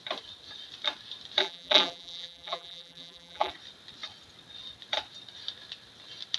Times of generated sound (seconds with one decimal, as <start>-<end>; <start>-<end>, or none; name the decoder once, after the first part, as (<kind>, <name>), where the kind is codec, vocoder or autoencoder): 1.4-3.5 (vocoder, BigVGAN v2)